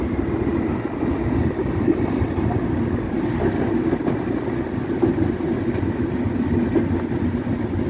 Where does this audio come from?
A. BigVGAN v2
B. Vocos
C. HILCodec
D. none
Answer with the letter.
D